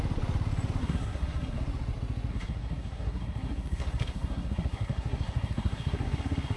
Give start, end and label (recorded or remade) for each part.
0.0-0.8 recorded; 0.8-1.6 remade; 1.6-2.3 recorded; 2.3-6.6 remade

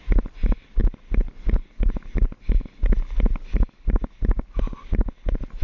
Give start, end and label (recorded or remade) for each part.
0.0-0.8 remade; 0.8-3.7 recorded; 3.7-5.6 remade

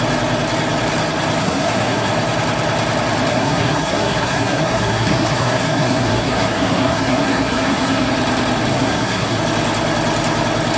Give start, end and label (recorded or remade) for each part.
0.0-1.4 recorded; 1.4-2.1 remade; 2.1-3.3 recorded; 3.3-8.1 remade; 8.1-8.7 recorded; 8.7-9.4 remade; 9.4-10.8 recorded

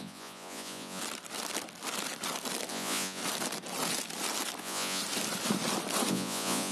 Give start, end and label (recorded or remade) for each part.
0.0-1.0 remade; 1.0-2.7 recorded; 2.7-3.2 remade; 3.2-4.6 recorded; 4.6-5.0 remade; 5.0-6.1 recorded; 6.1-6.7 remade

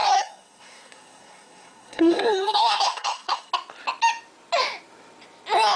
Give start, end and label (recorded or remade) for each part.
0.0-3.5 remade; 3.5-5.8 recorded

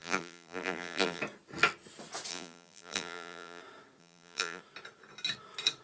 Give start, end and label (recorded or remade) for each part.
0.0-1.2 remade; 1.2-2.3 recorded; 2.3-3.6 remade; 3.6-4.0 recorded; 4.0-4.6 remade; 4.6-5.8 recorded